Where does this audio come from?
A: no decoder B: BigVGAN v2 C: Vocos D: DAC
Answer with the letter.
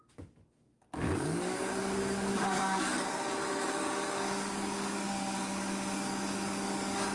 D